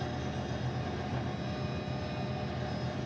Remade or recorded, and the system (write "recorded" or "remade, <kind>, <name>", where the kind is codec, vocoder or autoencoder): recorded